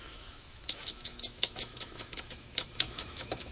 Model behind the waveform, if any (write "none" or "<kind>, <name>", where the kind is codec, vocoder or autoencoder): autoencoder, DAC-VAE